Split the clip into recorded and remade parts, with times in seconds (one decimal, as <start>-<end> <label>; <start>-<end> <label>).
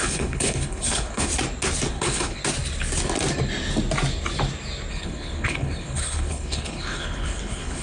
0.0-1.3 remade; 1.3-1.9 recorded; 1.9-2.4 remade; 2.4-4.9 recorded; 4.9-7.8 remade